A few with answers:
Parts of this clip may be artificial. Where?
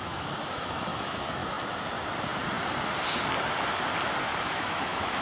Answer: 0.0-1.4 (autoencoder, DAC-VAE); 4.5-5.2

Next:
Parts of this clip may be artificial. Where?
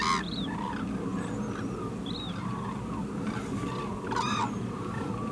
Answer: none